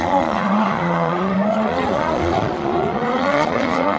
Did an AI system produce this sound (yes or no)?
yes